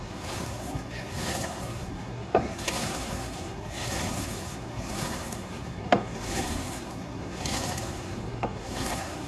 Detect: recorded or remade remade